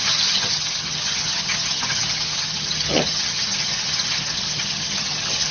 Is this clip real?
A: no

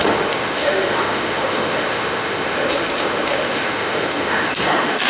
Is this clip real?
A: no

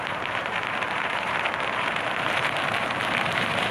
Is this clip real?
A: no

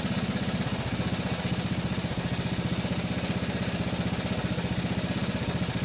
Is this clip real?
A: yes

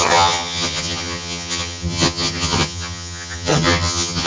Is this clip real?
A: no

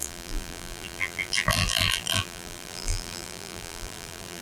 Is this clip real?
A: no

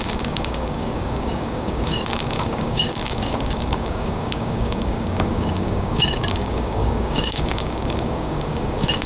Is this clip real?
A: no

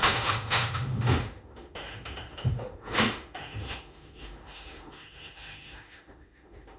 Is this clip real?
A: no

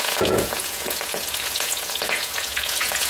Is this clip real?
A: no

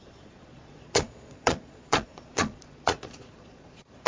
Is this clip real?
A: no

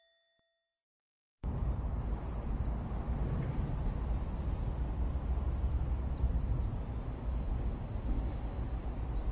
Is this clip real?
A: yes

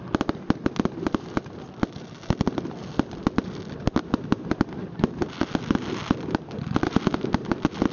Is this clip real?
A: yes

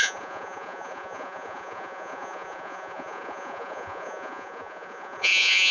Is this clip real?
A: no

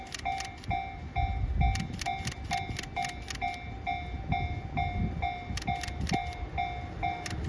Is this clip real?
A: yes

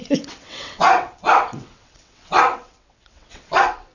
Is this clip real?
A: no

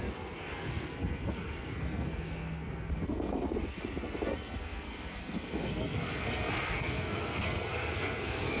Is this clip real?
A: no